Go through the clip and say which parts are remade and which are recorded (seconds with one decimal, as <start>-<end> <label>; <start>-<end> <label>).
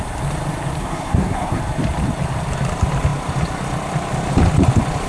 0.0-0.8 recorded; 0.8-1.6 remade; 1.6-5.1 recorded